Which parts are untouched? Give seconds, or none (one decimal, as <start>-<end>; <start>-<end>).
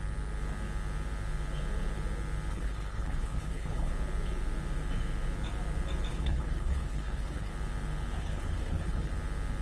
0.0-2.5; 3.9-6.1; 7.5-8.2; 9.1-9.6